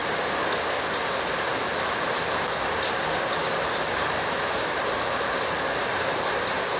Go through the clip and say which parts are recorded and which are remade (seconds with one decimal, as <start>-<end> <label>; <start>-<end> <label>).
0.0-6.8 recorded